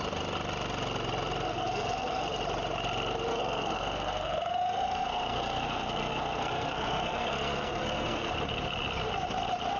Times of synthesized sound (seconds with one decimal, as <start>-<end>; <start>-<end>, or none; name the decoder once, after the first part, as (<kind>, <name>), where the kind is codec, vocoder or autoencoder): 1.5-2.4 (codec, SNAC); 3.3-8.3